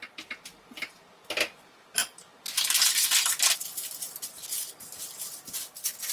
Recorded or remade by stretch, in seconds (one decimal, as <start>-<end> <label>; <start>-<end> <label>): 0.0-6.1 recorded